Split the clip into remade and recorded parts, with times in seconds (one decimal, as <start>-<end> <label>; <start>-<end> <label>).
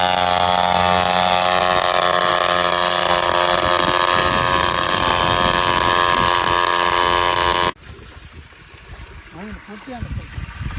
0.0-4.2 recorded; 4.2-5.1 remade; 5.1-10.8 recorded